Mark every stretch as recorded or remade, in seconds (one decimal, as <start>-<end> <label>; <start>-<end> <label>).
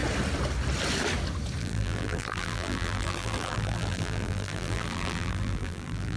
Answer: 0.0-1.6 recorded; 1.6-6.2 remade